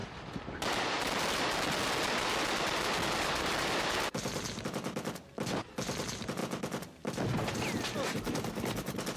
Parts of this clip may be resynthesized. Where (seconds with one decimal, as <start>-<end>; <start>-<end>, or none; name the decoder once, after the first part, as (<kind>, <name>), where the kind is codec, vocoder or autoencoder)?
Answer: none